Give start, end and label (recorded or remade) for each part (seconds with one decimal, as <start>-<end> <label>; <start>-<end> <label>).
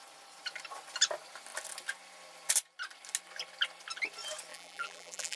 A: 0.0-4.5 recorded; 4.5-5.4 remade